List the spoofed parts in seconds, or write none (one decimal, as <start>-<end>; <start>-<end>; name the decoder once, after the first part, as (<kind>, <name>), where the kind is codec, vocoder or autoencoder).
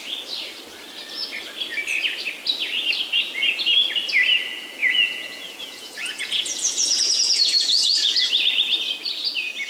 4.8-8.3 (vocoder, Vocos)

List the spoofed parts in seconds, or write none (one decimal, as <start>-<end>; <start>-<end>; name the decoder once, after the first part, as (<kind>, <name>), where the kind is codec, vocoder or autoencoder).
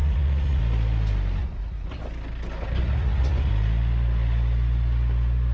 0.0-0.6 (vocoder, Vocos); 1.4-2.0; 2.8-3.5